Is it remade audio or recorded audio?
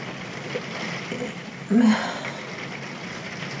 recorded